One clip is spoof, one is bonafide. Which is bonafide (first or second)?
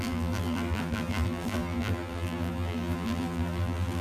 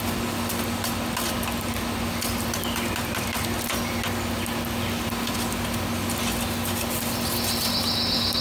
second